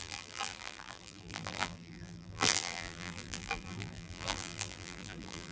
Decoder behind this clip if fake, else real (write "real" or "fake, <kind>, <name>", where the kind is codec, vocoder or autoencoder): fake, vocoder, BigVGAN v2